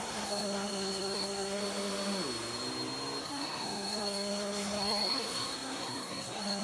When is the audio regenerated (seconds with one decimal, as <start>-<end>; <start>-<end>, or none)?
0.0-1.6; 3.2-6.6